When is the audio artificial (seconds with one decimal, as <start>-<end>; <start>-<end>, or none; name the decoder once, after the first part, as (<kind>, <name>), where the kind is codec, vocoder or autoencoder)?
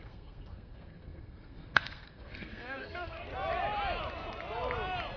0.0-3.3 (codec, SNAC)